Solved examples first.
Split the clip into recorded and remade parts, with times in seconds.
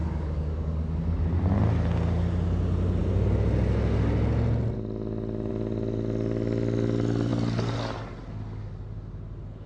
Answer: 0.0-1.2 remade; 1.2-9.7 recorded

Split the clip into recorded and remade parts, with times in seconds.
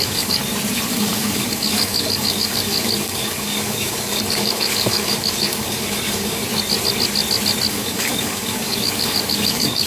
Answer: 0.0-0.4 remade; 0.4-0.9 recorded; 0.9-6.4 remade; 6.4-7.7 recorded; 7.7-9.9 remade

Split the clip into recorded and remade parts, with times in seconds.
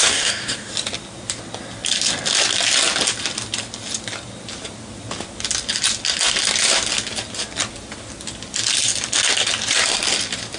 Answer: 0.0-0.7 remade; 0.7-10.6 recorded